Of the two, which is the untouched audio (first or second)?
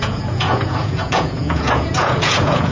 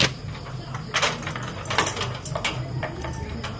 second